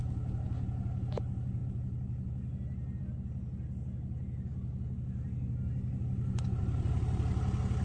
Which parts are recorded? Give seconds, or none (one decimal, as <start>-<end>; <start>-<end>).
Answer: 0.0-7.8